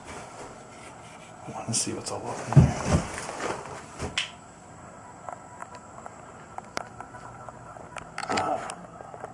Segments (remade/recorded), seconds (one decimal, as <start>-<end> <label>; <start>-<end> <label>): 0.0-9.3 recorded